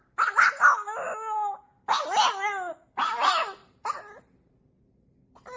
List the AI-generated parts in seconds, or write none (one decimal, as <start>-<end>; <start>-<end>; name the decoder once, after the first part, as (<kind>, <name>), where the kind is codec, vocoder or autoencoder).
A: none